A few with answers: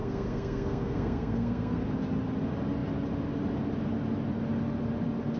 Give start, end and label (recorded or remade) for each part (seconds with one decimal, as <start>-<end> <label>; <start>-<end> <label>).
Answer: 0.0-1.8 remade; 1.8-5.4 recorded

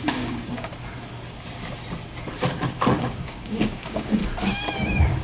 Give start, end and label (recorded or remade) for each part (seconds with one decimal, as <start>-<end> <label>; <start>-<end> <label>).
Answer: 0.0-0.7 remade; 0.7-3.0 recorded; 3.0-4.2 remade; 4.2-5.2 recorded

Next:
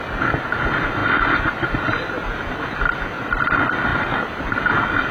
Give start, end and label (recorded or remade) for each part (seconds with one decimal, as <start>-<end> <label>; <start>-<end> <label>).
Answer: 0.0-5.1 recorded

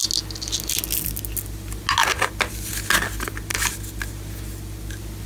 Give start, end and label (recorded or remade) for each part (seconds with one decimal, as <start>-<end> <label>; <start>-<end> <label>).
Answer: 0.0-5.3 recorded

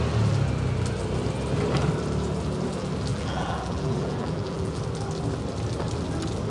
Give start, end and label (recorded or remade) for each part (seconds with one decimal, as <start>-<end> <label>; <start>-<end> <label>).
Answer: 0.0-3.1 recorded; 3.1-4.8 remade; 4.8-6.5 recorded

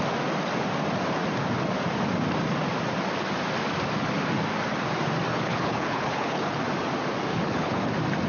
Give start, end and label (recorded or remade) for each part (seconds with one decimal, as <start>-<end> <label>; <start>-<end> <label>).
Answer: 0.0-5.3 recorded; 5.3-6.6 remade; 6.6-7.3 recorded; 7.3-7.9 remade; 7.9-8.3 recorded

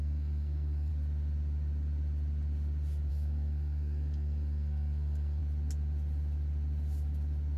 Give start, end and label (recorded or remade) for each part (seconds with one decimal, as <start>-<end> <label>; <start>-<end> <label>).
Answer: 0.0-0.9 remade; 0.9-3.1 recorded; 3.1-5.4 remade; 5.4-7.6 recorded

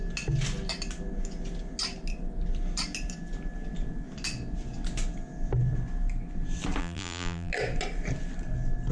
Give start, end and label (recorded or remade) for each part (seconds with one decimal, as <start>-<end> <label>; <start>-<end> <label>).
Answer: 0.0-6.8 recorded; 6.8-7.5 remade; 7.5-8.9 recorded